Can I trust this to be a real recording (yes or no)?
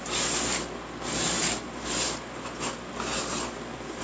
yes